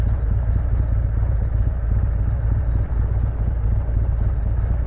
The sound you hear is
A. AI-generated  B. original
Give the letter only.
B